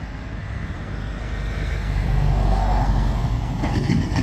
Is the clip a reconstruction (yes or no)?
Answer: yes